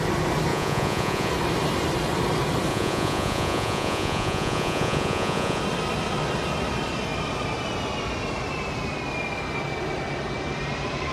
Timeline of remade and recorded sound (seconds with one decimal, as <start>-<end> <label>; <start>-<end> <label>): 0.0-0.5 recorded; 0.5-1.3 remade; 1.3-2.7 recorded; 2.7-5.6 remade; 5.6-11.1 recorded